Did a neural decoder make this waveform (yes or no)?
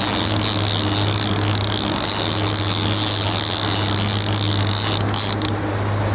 no